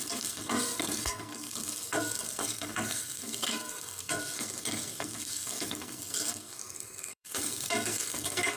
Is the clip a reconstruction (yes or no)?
yes